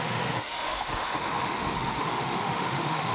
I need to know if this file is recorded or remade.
remade